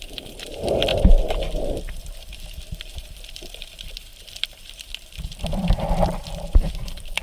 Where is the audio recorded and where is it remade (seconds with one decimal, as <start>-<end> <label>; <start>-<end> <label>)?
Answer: 0.0-0.9 remade; 0.9-2.3 recorded; 2.3-7.2 remade